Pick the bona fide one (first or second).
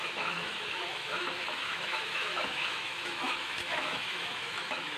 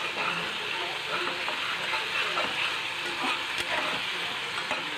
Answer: second